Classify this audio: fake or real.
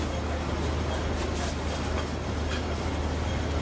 real